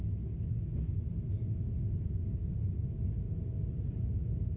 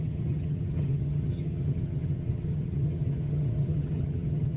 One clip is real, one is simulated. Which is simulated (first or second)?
second